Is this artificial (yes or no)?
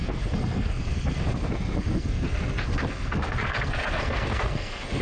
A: yes